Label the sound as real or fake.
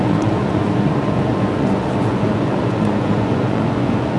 fake